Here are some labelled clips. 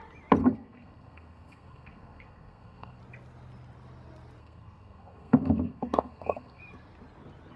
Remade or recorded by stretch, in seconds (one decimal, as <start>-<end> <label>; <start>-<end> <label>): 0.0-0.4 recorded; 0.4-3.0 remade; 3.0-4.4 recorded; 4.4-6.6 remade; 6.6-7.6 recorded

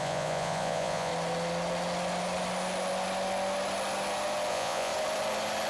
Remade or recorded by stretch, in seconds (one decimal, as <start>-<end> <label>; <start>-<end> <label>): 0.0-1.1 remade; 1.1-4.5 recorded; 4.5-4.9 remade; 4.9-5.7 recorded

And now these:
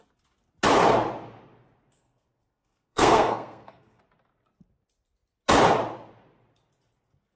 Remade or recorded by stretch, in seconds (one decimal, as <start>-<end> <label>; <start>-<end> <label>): 0.0-1.9 recorded; 1.9-4.0 remade; 4.0-7.4 recorded

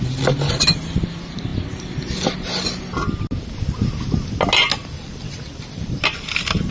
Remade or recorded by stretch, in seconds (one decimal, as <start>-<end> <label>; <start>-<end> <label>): 0.0-6.7 recorded

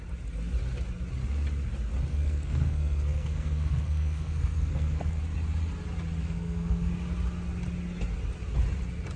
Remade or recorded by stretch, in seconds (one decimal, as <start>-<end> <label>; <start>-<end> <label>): 0.0-2.1 recorded; 2.1-5.2 remade; 5.2-6.2 recorded; 6.2-6.9 remade; 6.9-9.2 recorded